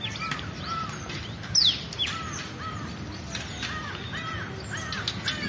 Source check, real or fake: real